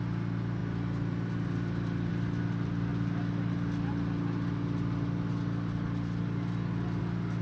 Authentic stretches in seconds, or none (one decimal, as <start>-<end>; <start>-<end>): 0.0-7.4